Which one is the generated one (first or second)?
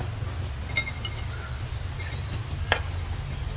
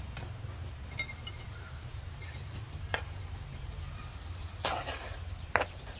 second